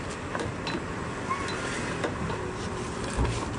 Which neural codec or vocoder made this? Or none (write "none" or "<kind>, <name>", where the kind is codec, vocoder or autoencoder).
none